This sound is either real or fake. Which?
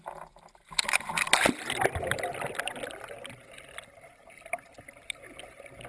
fake